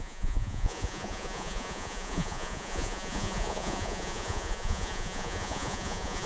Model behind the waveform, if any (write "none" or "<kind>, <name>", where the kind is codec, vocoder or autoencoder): vocoder, Vocos